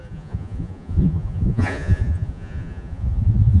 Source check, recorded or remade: remade